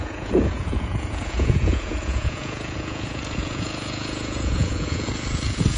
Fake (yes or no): yes